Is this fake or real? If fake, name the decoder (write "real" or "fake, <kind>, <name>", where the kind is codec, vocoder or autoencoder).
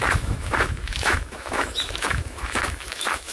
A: fake, autoencoder, DAC-VAE